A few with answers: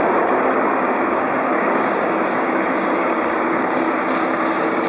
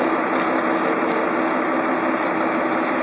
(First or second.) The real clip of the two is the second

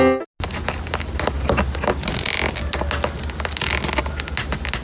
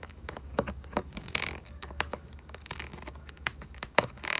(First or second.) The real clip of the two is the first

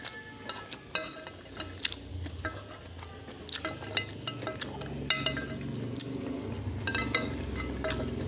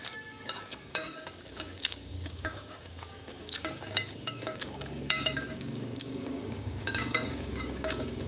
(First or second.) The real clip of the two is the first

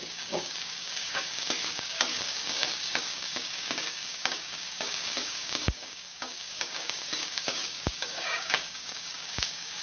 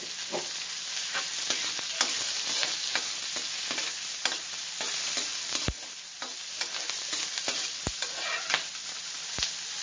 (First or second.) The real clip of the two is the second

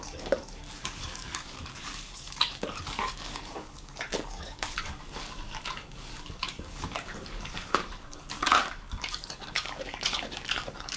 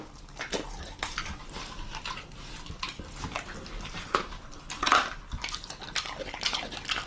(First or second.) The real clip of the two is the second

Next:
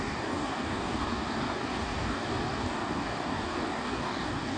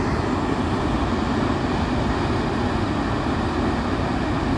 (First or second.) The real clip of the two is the second